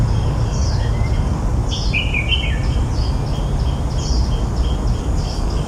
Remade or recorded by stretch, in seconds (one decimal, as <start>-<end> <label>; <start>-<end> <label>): 0.0-0.6 remade; 0.6-1.2 recorded; 1.2-1.6 remade; 1.6-5.0 recorded; 5.0-5.7 remade